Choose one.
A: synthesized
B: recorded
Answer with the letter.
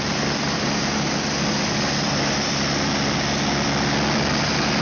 B